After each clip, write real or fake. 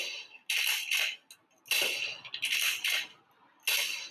real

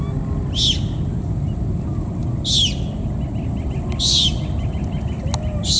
real